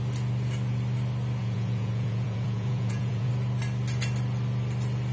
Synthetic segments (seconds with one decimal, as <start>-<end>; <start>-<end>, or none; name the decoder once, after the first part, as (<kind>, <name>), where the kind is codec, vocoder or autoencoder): 1.4-3.3 (vocoder, Vocos)